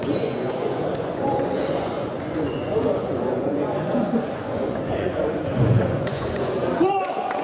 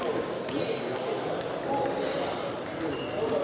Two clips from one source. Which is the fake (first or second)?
first